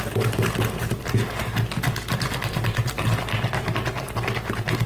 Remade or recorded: recorded